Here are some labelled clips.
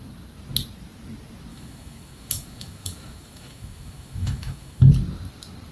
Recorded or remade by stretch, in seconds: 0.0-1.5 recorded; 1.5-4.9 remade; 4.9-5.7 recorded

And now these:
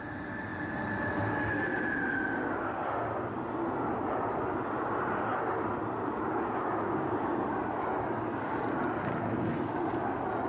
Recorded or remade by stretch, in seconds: 0.0-0.5 recorded; 0.5-1.1 remade; 1.1-5.3 recorded; 5.3-5.8 remade; 5.8-10.5 recorded

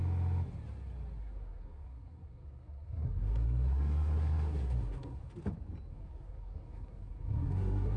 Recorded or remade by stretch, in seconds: 0.0-1.2 recorded; 1.2-5.3 remade; 5.3-5.9 recorded; 5.9-8.0 remade